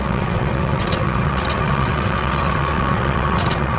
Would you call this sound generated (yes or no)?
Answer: yes